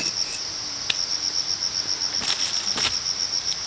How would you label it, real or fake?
real